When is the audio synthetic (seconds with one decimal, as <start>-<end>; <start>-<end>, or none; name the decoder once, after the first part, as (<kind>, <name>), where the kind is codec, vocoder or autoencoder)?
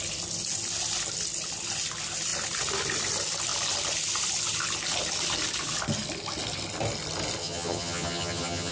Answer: 7.4-8.7 (vocoder, HiFi-GAN)